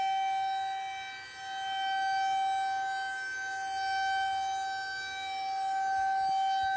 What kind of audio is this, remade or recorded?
recorded